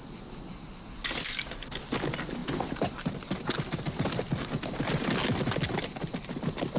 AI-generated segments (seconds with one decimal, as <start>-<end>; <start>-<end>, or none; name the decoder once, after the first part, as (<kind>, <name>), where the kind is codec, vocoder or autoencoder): none